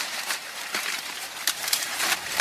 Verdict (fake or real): fake